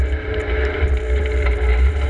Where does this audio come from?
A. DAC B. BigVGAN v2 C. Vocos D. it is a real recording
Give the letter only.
B